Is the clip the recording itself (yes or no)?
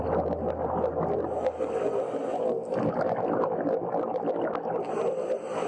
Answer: yes